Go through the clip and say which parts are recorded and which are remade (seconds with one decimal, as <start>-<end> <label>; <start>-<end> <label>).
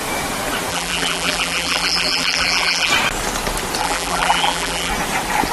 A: 0.0-0.7 recorded; 0.7-2.9 remade; 2.9-3.8 recorded; 3.8-4.9 remade; 4.9-5.5 recorded